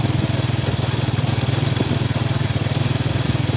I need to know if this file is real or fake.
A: real